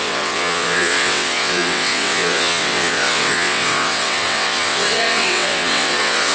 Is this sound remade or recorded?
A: remade